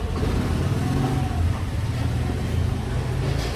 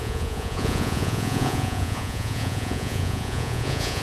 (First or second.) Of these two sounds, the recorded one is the first